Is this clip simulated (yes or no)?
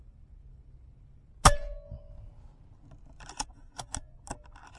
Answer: no